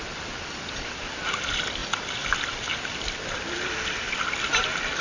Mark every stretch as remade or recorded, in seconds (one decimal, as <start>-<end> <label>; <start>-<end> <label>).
0.0-5.0 recorded